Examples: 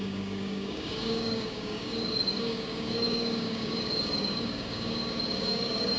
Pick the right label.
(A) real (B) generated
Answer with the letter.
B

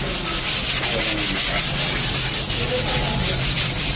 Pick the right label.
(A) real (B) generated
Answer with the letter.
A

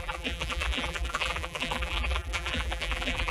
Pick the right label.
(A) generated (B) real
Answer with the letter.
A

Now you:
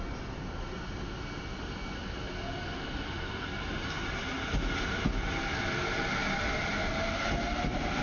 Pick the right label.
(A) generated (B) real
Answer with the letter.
B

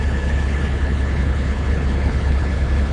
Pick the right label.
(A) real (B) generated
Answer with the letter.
B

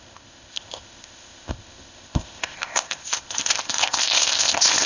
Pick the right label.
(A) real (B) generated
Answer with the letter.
B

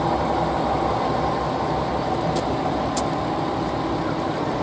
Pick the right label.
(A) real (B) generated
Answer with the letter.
A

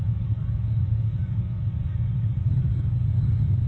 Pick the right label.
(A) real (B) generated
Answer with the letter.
B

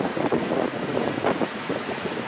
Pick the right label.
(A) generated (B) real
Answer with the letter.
A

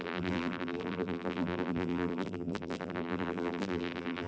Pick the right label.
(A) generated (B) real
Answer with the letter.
A